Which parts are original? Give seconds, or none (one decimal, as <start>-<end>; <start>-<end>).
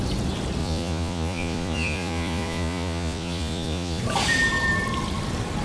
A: 0.0-0.6; 4.0-5.6